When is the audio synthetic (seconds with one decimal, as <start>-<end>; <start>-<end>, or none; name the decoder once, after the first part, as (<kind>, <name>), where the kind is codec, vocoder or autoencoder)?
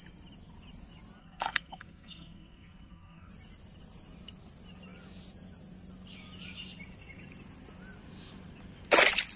1.2-3.3 (codec, SNAC)